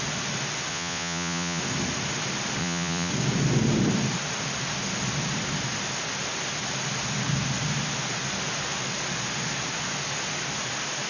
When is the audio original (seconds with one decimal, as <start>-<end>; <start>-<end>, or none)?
0.0-0.7; 1.6-2.6; 3.1-11.1